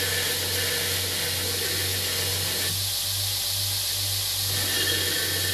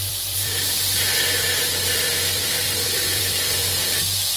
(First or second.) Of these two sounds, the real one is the first